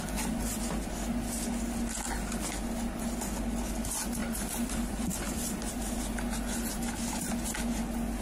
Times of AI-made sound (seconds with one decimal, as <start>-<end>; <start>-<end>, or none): 4.2-5.5